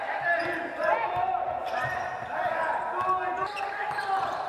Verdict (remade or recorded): recorded